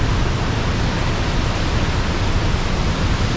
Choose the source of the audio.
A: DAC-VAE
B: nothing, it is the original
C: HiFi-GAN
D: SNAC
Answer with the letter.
B